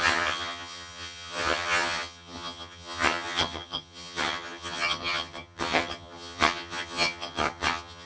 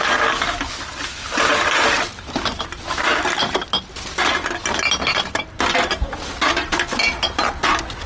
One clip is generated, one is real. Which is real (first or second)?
second